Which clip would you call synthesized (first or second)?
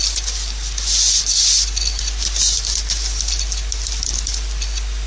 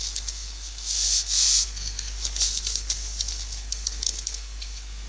second